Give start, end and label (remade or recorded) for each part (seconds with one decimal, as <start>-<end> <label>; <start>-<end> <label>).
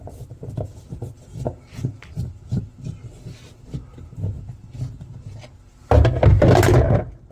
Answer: 0.0-7.3 recorded